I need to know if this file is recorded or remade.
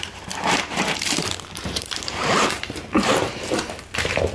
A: remade